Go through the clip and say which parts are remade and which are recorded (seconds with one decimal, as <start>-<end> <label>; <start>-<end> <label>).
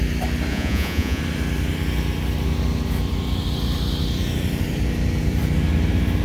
0.0-0.5 recorded; 0.5-1.2 remade; 1.2-6.2 recorded